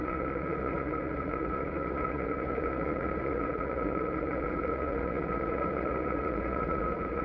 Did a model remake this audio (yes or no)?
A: yes